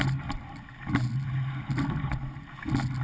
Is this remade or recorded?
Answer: recorded